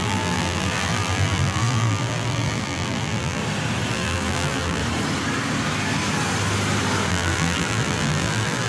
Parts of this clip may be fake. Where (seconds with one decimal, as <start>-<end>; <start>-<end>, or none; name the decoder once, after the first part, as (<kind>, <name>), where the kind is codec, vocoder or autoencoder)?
0.0-3.4 (vocoder, BigVGAN v2); 3.9-4.8; 7.1-8.7